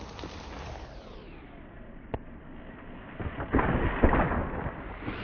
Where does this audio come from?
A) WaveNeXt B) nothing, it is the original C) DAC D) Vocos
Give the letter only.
B